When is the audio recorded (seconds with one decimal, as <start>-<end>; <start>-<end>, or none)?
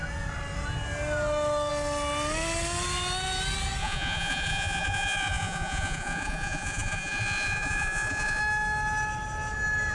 0.0-3.8; 8.4-9.9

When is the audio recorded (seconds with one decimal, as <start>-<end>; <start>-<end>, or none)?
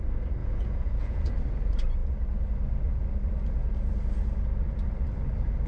0.0-0.4; 1.3-5.7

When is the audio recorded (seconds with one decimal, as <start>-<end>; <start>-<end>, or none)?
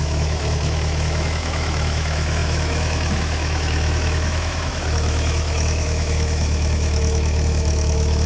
none